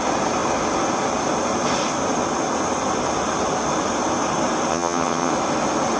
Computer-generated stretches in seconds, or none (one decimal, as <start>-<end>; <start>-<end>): 4.7-5.3

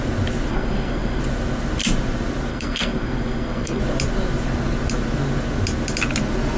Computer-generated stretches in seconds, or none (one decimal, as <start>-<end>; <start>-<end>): 0.5-1.2; 2.5-3.8

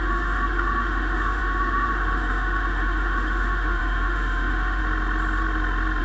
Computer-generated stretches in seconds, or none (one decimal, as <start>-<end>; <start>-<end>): 0.0-4.8

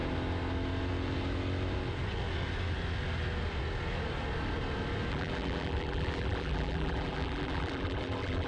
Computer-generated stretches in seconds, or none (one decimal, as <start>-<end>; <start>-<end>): 5.1-8.5

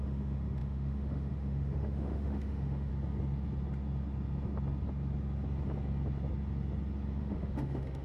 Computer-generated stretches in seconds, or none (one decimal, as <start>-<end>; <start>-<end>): 0.0-2.9; 7.2-8.0

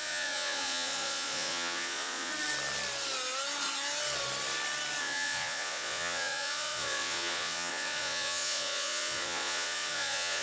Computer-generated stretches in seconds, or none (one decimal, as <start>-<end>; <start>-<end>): 0.0-2.3; 5.0-10.4

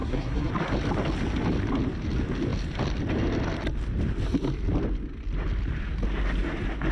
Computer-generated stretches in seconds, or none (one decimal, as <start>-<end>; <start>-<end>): 0.0-0.5